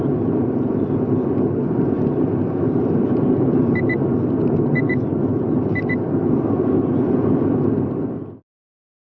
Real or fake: real